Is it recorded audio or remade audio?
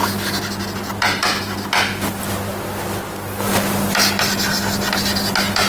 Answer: recorded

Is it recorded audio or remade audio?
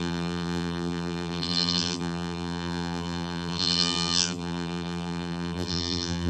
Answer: remade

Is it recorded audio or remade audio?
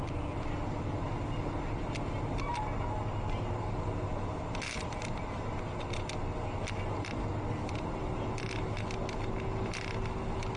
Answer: recorded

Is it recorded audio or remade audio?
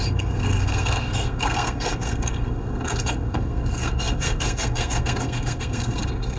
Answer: remade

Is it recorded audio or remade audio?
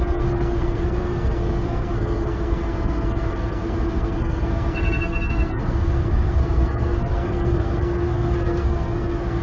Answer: remade